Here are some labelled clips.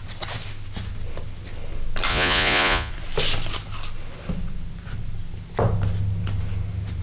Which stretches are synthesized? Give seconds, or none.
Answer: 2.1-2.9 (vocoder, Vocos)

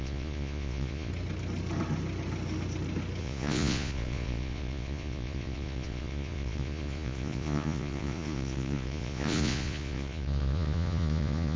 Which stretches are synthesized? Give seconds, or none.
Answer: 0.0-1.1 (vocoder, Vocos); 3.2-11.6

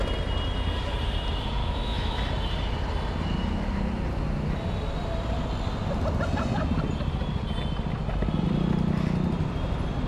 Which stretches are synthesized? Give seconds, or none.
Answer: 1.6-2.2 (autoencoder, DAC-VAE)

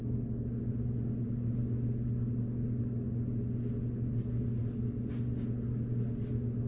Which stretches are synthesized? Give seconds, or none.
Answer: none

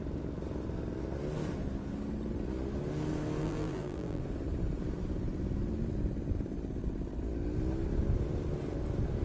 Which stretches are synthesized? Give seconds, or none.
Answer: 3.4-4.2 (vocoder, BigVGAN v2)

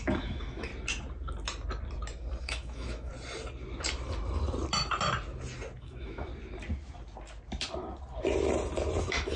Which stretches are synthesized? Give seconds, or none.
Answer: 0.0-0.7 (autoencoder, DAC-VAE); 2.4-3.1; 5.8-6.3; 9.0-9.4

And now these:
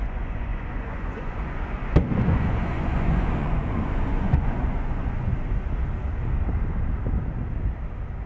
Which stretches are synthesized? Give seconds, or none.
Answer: 0.0-5.3 (vocoder, Vocos)

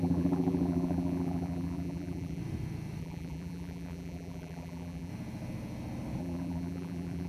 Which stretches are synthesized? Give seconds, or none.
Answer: 0.0-2.4 (vocoder, BigVGAN v2); 3.0-5.1; 6.2-7.3